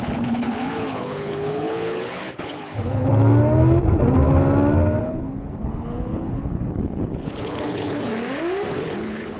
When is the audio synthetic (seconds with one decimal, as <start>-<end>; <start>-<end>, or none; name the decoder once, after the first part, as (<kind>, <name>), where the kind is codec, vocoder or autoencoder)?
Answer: 0.0-3.1 (codec, HILCodec); 5.0-8.1; 8.7-9.4